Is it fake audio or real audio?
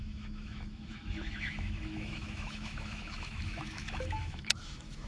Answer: fake